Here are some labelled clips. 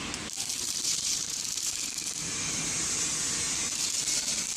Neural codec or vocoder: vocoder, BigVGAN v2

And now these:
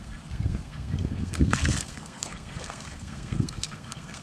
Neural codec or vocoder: codec, SNAC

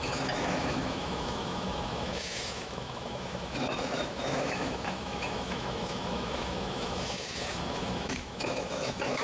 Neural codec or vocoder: autoencoder, DAC-VAE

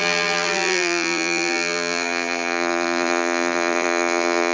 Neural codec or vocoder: vocoder, BigVGAN v2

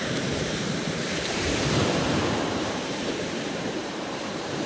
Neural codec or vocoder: vocoder, BigVGAN v2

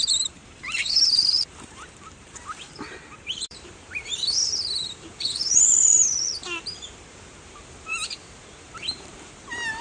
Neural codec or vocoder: vocoder, BigVGAN v2